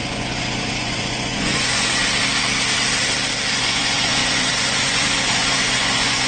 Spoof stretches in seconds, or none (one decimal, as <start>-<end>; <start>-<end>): 0.0-2.0; 3.6-6.3